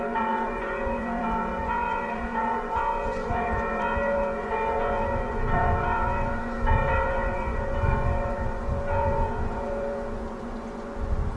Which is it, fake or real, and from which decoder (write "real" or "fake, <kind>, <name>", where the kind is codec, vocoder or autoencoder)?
fake, vocoder, Vocos